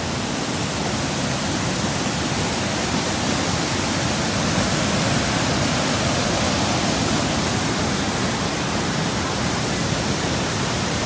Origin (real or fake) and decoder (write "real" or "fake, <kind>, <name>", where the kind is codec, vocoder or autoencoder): real